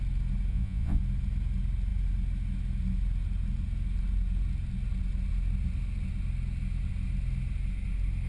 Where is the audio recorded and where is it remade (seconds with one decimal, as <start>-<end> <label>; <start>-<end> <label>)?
0.0-0.5 recorded; 0.5-1.0 remade; 1.0-8.3 recorded